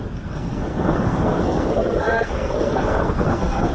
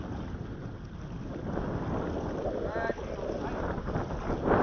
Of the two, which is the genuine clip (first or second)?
second